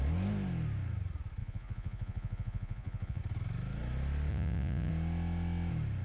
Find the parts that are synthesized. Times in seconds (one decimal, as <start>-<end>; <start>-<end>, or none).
1.4-3.2; 4.3-4.9